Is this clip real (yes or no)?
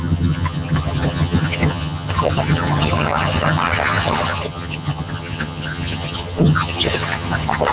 no